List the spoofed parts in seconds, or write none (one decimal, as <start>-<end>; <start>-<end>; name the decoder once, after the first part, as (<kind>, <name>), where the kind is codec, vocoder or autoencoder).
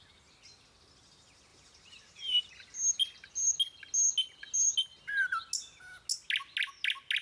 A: 1.5-2.5 (vocoder, BigVGAN v2)